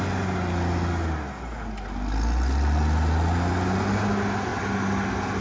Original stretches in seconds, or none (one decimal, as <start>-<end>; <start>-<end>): 0.0-5.4